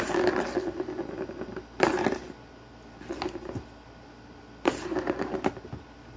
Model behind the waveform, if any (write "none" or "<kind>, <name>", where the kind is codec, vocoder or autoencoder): none